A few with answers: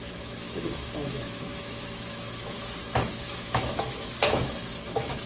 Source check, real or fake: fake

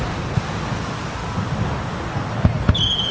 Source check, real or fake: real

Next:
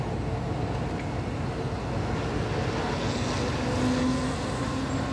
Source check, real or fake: real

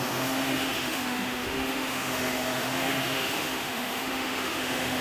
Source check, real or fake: fake